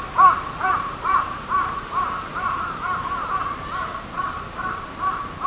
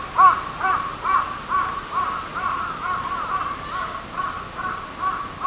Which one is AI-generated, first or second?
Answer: first